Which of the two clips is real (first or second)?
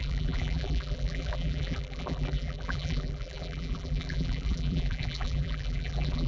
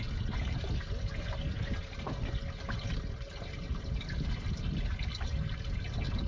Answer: second